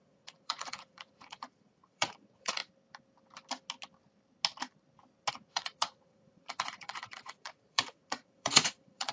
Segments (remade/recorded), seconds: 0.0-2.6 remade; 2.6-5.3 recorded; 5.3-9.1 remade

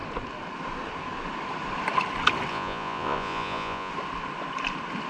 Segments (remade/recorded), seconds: 0.0-2.5 recorded; 2.5-3.9 remade; 3.9-5.1 recorded